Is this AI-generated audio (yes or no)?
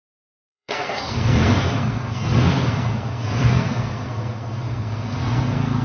yes